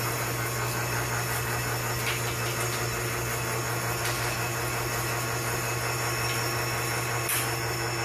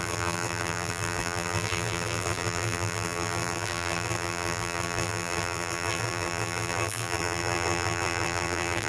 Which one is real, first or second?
first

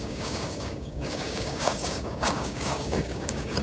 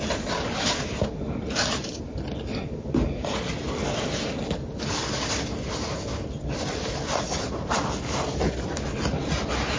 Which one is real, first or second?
second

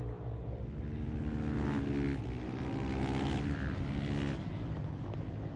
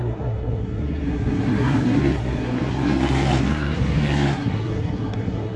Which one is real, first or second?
first